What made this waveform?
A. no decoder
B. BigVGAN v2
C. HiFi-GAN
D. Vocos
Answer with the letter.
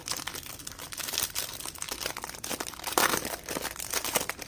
B